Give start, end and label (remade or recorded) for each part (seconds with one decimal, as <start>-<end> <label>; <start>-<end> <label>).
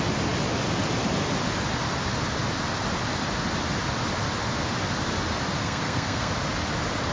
0.0-5.6 recorded; 5.6-6.3 remade; 6.3-7.1 recorded